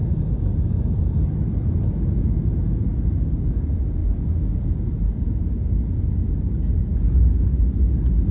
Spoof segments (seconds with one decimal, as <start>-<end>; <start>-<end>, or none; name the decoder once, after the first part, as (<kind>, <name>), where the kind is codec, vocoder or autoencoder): none